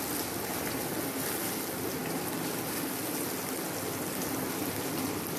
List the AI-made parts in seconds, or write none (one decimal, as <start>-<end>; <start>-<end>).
none